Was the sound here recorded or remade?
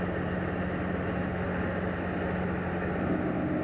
recorded